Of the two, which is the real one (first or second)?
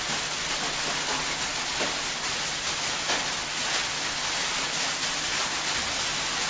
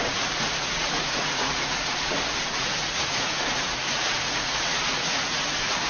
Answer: first